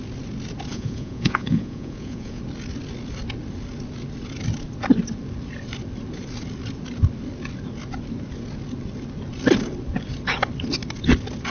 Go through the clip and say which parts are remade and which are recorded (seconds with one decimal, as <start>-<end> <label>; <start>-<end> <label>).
0.0-0.7 recorded; 0.7-2.4 remade; 2.4-11.5 recorded